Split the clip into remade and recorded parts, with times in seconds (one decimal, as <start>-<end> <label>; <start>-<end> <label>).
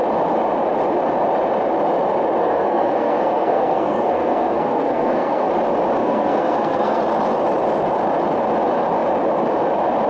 0.0-2.4 recorded; 2.4-5.5 remade; 5.5-6.0 recorded; 6.0-7.0 remade; 7.0-10.1 recorded